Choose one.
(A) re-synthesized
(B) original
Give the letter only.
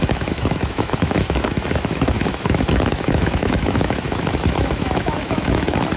A